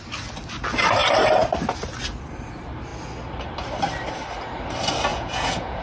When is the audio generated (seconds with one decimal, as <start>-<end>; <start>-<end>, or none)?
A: 5.1-5.8